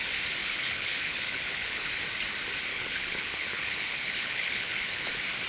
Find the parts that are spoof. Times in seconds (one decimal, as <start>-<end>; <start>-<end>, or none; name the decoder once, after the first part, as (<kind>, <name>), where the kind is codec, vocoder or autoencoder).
0.4-1.9 (codec, HILCodec); 2.7-5.1